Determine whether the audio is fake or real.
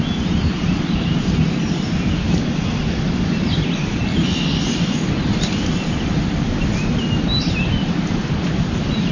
real